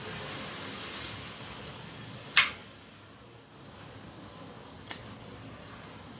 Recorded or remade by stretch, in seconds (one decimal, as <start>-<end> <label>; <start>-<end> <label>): 0.0-2.6 remade; 2.6-4.2 recorded; 4.2-5.0 remade; 5.0-5.6 recorded; 5.6-6.2 remade